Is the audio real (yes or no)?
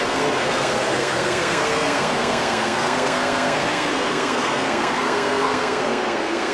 no